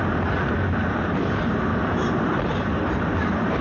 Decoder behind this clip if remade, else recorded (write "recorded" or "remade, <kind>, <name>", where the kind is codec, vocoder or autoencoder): remade, vocoder, BigVGAN v2